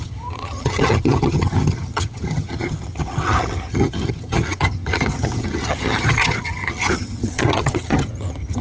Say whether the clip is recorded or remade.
remade